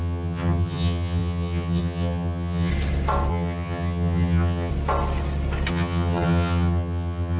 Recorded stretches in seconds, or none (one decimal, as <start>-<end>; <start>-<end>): 2.7-3.3; 4.7-5.7